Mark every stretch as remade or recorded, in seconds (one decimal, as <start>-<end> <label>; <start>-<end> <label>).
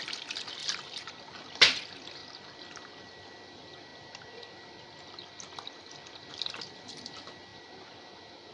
0.0-8.5 recorded